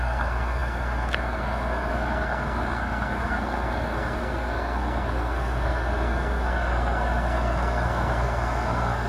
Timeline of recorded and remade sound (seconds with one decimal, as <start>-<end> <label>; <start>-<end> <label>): 0.0-9.1 remade